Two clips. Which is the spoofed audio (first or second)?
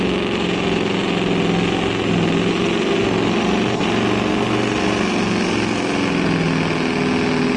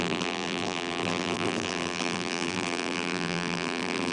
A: second